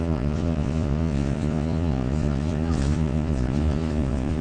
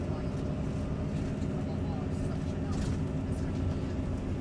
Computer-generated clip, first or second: first